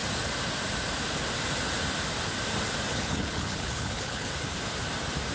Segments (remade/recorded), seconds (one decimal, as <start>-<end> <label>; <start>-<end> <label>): 0.0-2.9 recorded; 2.9-4.3 remade; 4.3-5.3 recorded